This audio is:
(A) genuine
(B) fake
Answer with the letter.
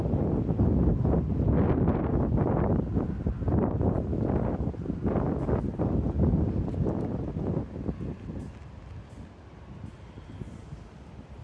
A